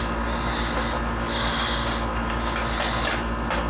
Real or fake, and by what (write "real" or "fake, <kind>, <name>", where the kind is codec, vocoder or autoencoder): real